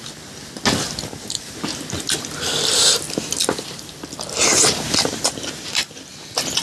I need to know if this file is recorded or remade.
recorded